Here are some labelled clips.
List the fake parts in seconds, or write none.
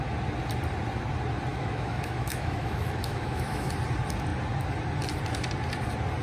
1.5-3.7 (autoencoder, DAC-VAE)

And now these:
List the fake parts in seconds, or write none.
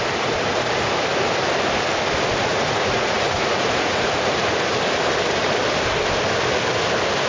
2.5-4.5 (vocoder, Vocos)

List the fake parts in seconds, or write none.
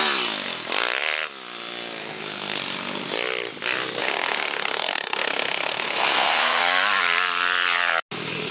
2.0-2.6 (codec, SNAC); 4.0-6.6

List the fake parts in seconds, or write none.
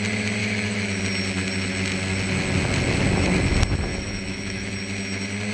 0.4-1.0 (autoencoder, DAC-VAE); 3.9-4.7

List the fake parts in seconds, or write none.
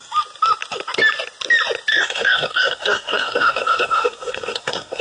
1.9-5.0 (codec, SNAC)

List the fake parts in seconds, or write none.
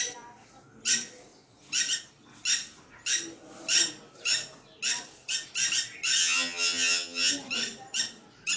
6.2-7.3 (vocoder, HiFi-GAN)